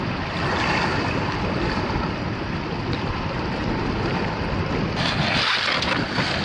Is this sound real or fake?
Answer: real